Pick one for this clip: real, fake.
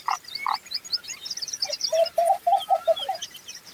fake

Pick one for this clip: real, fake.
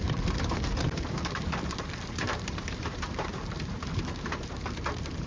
fake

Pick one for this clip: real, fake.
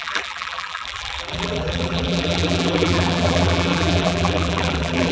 fake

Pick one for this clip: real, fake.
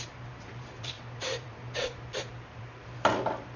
fake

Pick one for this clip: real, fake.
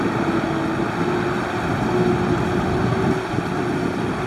real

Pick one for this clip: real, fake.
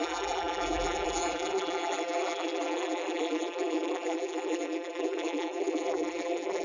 fake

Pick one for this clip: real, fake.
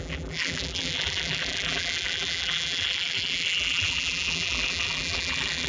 fake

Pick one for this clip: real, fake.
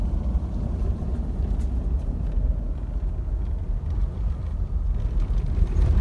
real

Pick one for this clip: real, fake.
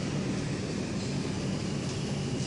real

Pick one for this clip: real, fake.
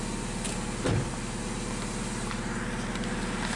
real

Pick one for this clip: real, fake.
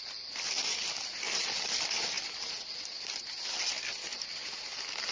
real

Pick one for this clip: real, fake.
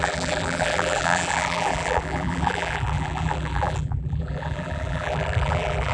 fake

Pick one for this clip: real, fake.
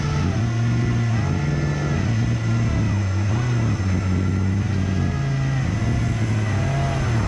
real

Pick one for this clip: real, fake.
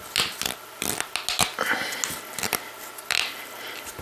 real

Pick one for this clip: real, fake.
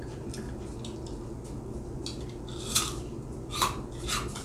real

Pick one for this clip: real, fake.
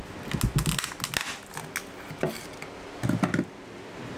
real